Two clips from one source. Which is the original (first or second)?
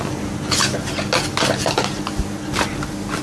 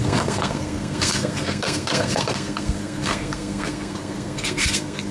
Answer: first